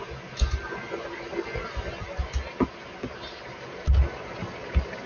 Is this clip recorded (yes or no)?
yes